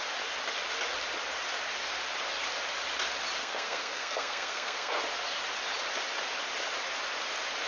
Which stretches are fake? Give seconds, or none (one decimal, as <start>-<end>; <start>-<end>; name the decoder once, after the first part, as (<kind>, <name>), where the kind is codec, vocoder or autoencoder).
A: 3.4-5.0 (codec, SNAC)